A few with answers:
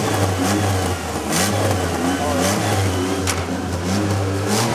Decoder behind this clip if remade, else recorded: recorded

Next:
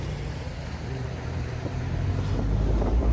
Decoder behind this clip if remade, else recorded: remade, vocoder, BigVGAN v2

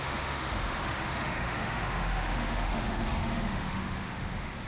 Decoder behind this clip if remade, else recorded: remade, autoencoder, DAC-VAE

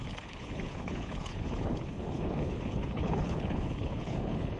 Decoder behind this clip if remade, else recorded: remade, codec, HILCodec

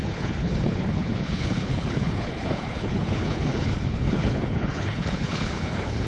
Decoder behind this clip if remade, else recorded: remade, codec, HILCodec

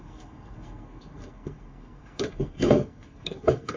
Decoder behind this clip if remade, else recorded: remade, codec, SNAC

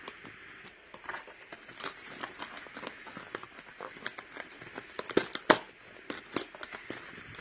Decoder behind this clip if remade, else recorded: recorded